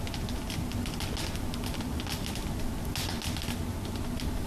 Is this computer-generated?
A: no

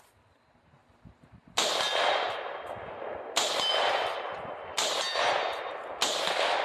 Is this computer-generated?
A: no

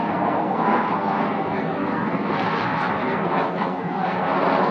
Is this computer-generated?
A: yes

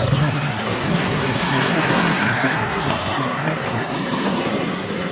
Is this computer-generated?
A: yes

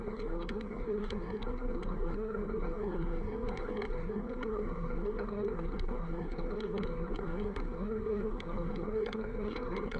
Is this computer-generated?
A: yes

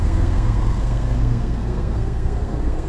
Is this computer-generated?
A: yes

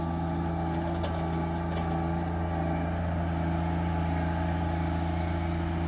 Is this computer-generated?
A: no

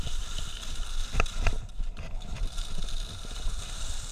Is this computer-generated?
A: no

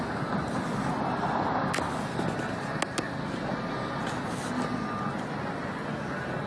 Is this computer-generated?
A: no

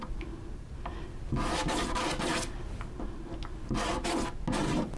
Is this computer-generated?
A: no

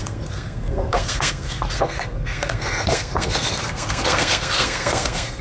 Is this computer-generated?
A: yes